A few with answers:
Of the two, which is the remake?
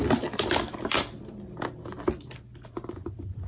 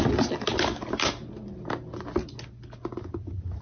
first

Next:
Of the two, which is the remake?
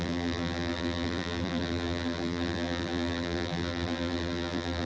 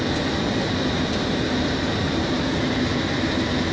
first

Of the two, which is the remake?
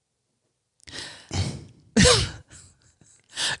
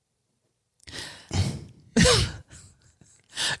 second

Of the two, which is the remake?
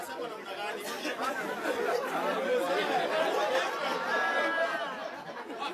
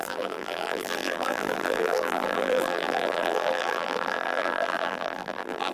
second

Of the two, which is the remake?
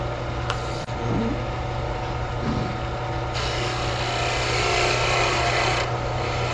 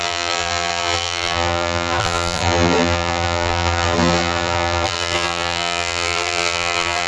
second